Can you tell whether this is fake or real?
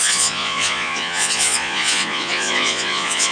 fake